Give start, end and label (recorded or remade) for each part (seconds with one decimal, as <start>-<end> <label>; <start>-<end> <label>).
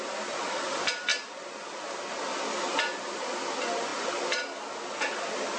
0.0-5.6 recorded